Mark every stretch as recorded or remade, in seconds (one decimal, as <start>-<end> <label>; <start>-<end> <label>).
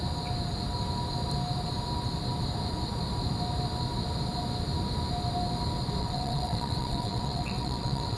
0.0-6.0 recorded; 6.0-8.2 remade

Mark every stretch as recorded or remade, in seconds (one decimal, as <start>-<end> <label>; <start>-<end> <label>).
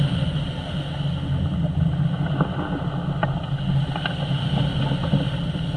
0.0-5.8 recorded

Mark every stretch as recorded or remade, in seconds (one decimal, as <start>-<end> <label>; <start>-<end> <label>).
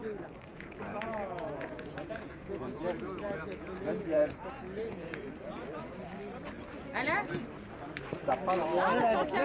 0.0-0.5 recorded; 0.5-5.2 remade; 5.2-9.4 recorded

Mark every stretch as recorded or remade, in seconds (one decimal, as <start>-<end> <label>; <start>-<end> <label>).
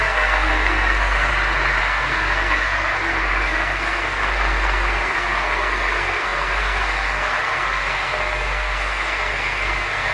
0.0-1.3 remade; 1.3-1.8 recorded; 1.8-10.1 remade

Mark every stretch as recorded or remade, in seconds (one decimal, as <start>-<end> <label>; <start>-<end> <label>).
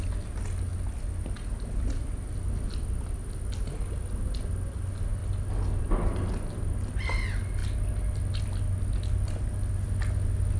0.0-10.6 recorded